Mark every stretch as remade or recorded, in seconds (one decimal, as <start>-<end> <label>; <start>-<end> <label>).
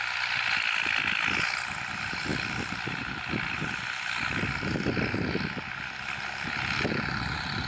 0.0-7.7 recorded